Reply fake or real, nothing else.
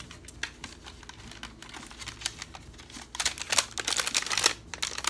real